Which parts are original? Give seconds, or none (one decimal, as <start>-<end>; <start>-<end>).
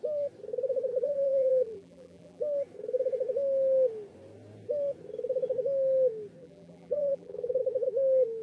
0.0-0.9; 2.4-6.4; 7.6-8.4